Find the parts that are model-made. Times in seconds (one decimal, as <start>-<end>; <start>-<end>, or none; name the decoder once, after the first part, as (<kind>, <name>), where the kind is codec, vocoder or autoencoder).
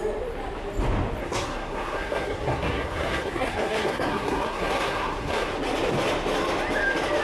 1.2-5.5 (codec, SNAC)